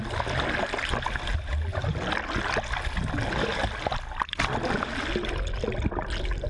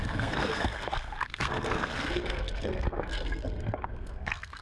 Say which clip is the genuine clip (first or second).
first